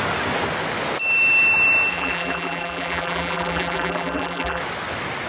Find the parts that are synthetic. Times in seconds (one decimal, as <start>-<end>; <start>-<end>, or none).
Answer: 1.9-4.6